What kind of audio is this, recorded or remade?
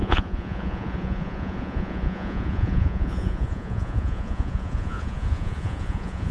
remade